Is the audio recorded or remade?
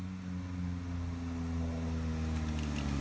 recorded